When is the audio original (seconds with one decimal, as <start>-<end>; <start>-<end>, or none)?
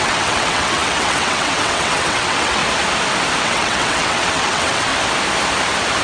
2.6-3.4; 4.9-6.0